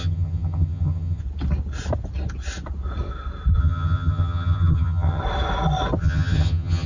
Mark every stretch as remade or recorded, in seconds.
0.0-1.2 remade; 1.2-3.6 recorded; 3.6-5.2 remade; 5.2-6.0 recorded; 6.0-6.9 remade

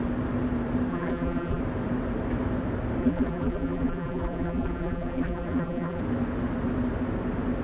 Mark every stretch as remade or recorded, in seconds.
0.0-0.9 recorded; 0.9-1.6 remade; 1.6-3.0 recorded; 3.0-6.0 remade; 6.0-7.6 recorded

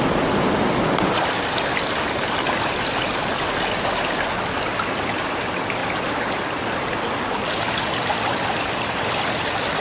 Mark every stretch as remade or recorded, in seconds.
0.0-9.8 recorded

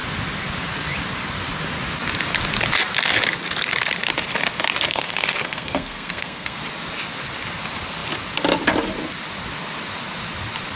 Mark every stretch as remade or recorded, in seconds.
0.0-4.9 recorded; 4.9-6.6 remade; 6.6-10.8 recorded

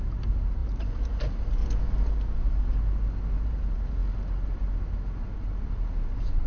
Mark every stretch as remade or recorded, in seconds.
0.0-1.6 remade; 1.6-2.1 recorded; 2.1-2.7 remade; 2.7-3.4 recorded; 3.4-4.0 remade; 4.0-5.3 recorded; 5.3-6.5 remade

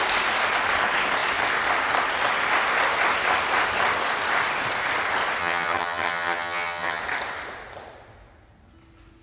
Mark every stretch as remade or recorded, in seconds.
0.0-5.4 recorded; 5.4-7.0 remade; 7.0-9.2 recorded